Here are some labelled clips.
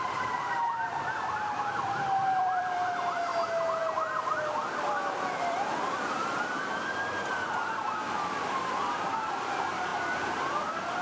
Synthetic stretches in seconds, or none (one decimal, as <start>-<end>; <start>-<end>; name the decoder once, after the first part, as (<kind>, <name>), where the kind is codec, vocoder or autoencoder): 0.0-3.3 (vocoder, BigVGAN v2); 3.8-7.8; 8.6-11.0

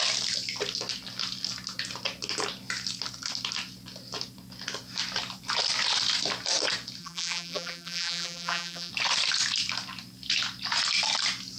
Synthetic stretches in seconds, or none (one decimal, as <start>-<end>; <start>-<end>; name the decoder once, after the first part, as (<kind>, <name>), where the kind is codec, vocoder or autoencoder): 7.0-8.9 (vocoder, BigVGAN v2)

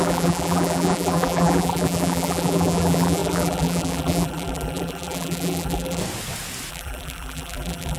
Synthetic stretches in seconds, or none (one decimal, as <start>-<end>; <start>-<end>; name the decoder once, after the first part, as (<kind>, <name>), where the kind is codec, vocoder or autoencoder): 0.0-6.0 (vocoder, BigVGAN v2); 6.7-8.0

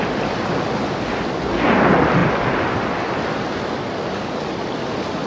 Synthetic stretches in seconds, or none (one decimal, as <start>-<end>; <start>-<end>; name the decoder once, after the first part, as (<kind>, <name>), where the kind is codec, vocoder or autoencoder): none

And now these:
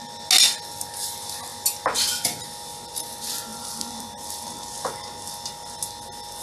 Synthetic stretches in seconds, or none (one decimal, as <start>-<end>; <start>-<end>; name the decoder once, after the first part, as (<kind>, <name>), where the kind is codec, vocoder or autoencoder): 3.5-4.9 (vocoder, BigVGAN v2)

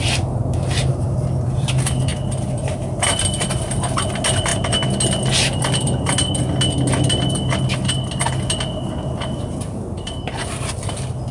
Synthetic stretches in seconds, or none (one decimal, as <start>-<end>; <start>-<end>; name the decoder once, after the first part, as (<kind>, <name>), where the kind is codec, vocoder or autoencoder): none